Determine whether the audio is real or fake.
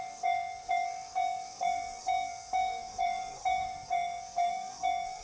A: fake